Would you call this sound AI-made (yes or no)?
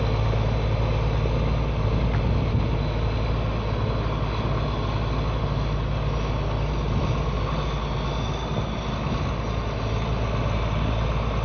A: no